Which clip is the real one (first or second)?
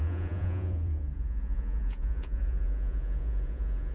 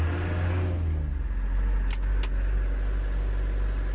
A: second